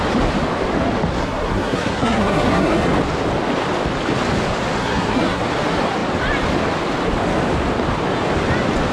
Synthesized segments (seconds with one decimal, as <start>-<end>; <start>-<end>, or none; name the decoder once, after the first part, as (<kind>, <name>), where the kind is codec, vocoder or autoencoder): 1.2-2.9 (codec, SNAC); 4.8-5.4